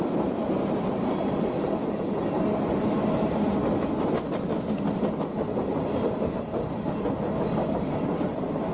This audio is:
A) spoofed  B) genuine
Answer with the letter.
B